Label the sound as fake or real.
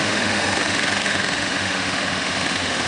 fake